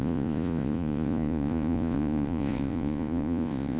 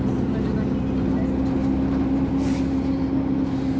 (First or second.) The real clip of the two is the second